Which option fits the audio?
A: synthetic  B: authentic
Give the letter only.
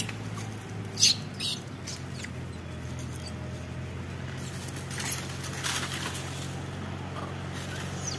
B